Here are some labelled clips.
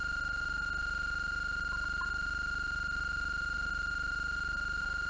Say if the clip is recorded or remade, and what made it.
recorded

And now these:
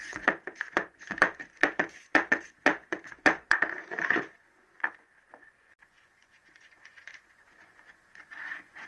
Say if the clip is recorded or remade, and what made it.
remade, vocoder, Vocos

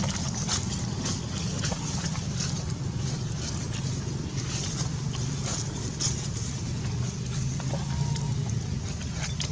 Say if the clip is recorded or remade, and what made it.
recorded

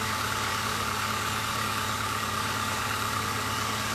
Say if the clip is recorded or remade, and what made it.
remade, codec, DAC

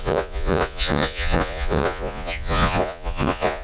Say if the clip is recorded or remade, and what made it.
remade, vocoder, Vocos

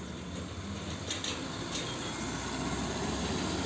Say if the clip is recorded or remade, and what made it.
recorded